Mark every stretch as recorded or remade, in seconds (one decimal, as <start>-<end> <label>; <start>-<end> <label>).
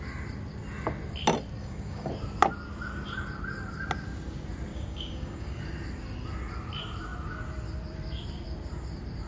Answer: 0.0-1.6 recorded; 1.6-2.1 remade; 2.1-4.7 recorded; 4.7-5.6 remade; 5.6-9.3 recorded